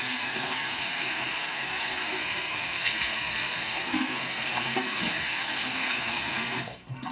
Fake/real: fake